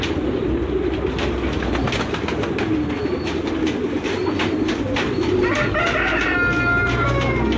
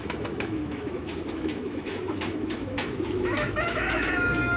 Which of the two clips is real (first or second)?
first